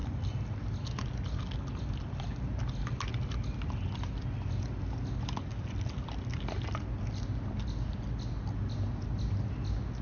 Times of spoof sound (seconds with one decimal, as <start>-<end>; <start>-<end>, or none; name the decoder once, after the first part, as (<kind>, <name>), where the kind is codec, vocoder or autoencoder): none